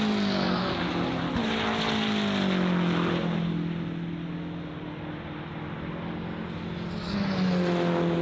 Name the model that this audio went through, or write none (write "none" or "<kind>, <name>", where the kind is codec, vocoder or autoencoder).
none